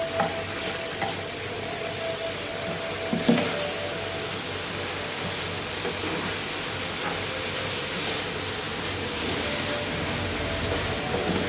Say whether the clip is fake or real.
real